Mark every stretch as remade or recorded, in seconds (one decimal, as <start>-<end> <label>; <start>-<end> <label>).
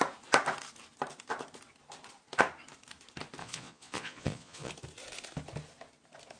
0.0-3.4 recorded; 3.4-4.7 remade; 4.7-6.4 recorded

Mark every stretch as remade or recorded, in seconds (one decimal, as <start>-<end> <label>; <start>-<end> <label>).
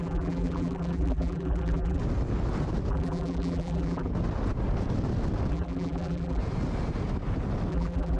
0.0-2.0 remade; 2.0-2.9 recorded; 2.9-4.1 remade; 4.1-5.5 recorded; 5.5-6.4 remade; 6.4-7.7 recorded; 7.7-8.2 remade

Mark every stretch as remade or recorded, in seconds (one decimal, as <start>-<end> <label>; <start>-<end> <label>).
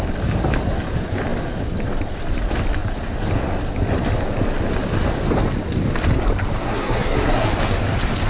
0.0-6.6 recorded; 6.6-7.5 remade; 7.5-8.3 recorded